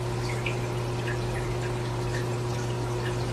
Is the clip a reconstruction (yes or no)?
yes